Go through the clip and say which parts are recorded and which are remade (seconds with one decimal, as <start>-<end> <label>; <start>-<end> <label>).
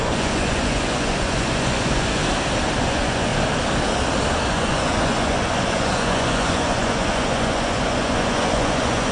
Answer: 0.0-2.2 remade; 2.2-2.8 recorded; 2.8-3.3 remade; 3.3-4.5 recorded; 4.5-9.1 remade